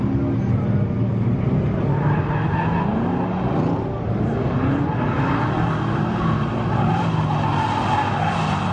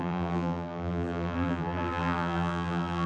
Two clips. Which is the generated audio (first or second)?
second